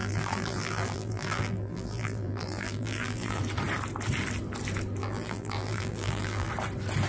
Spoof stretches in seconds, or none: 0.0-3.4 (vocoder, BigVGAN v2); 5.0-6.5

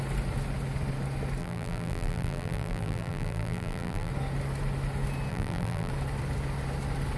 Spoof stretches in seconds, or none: 1.4-4.1 (vocoder, BigVGAN v2); 5.3-5.9

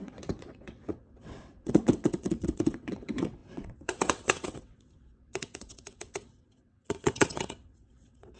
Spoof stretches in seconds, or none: 0.0-8.4 (vocoder, WaveNeXt)

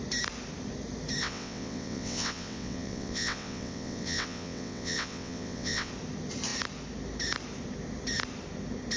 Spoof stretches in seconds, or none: 1.2-5.9 (vocoder, WaveNeXt)

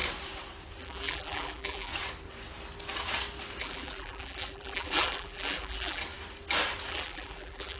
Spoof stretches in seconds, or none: 0.8-1.9 (vocoder, BigVGAN v2); 3.6-6.0; 6.9-7.8

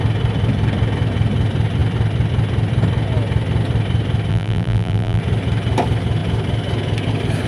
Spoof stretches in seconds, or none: 4.3-5.2 (vocoder, BigVGAN v2)